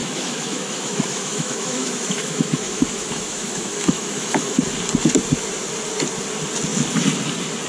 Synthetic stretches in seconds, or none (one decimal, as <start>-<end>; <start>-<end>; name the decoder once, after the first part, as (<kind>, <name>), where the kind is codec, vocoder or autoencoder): 0.0-4.6 (autoencoder, DAC-VAE)